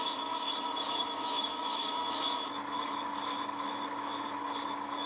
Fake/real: fake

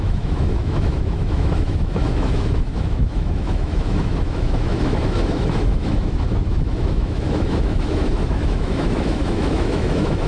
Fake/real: fake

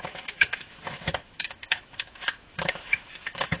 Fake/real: fake